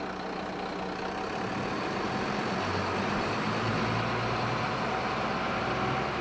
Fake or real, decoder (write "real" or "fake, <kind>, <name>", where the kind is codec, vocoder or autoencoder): real